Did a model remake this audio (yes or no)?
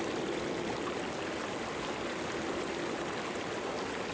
no